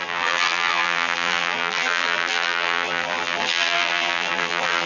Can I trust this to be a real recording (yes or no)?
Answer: no